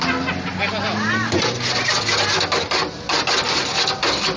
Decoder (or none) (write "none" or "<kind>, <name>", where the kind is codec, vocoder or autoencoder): none